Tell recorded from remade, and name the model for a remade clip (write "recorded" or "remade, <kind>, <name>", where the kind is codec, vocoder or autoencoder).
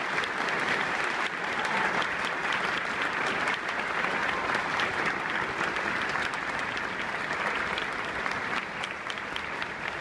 recorded